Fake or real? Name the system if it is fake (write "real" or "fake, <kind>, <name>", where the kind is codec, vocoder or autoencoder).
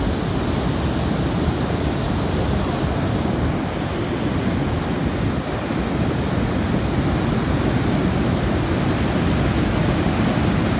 real